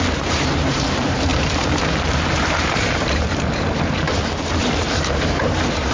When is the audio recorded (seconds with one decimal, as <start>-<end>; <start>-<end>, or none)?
none